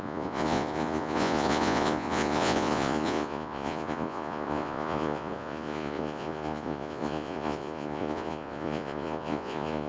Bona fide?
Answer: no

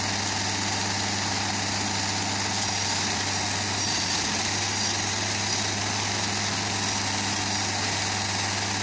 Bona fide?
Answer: yes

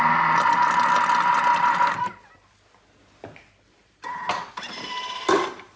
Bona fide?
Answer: yes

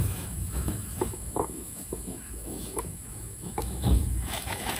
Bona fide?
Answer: no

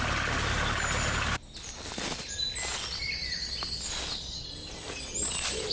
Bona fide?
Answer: yes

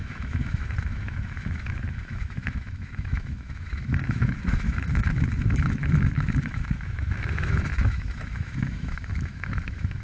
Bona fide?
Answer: no